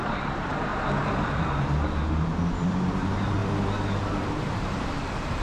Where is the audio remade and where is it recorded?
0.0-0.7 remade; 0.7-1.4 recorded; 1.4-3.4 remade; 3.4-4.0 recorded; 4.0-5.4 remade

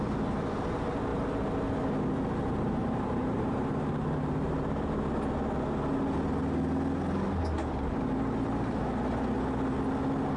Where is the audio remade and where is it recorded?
0.0-2.8 recorded; 2.8-5.0 remade; 5.0-10.4 recorded

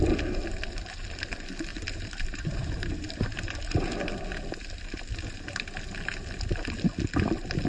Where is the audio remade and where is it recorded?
0.0-1.7 recorded; 1.7-4.0 remade; 4.0-7.7 recorded

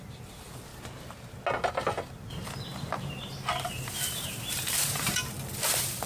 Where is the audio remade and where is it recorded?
0.0-2.7 recorded; 2.7-5.1 remade; 5.1-6.1 recorded

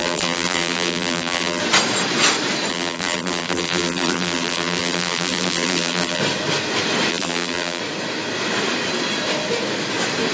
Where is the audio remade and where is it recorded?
0.0-1.6 remade; 1.6-2.7 recorded; 2.7-6.2 remade; 6.2-7.1 recorded; 7.1-7.8 remade; 7.8-10.3 recorded

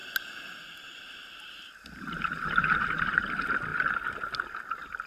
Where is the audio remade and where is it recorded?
0.0-3.1 remade; 3.1-5.1 recorded